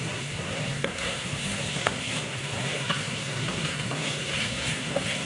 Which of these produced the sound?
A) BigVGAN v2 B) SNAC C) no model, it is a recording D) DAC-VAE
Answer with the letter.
B